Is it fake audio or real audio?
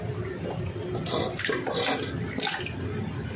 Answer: real